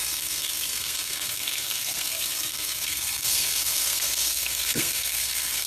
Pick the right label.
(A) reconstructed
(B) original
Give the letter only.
A